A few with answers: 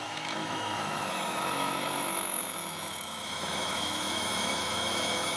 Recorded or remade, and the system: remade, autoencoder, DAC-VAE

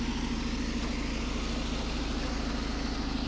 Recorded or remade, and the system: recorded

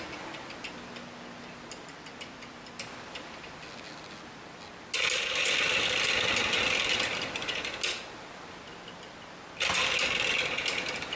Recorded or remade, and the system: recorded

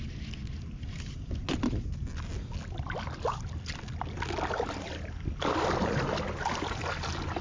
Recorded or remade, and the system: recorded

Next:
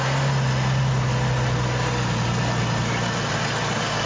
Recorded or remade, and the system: recorded